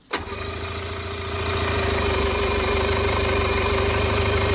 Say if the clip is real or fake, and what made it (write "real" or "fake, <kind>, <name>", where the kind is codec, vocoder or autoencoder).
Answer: real